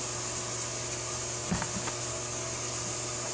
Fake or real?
real